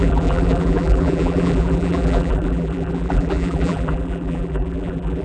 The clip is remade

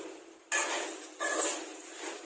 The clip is recorded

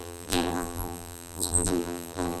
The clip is remade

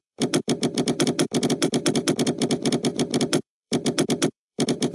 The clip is remade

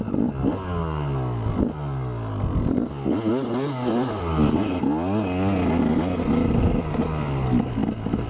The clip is recorded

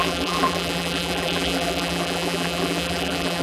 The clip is remade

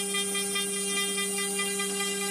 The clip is recorded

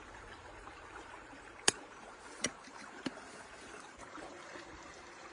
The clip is remade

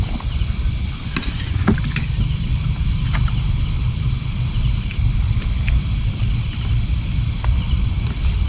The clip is recorded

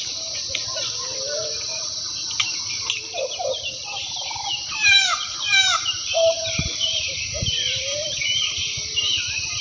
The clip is remade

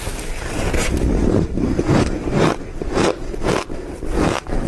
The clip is remade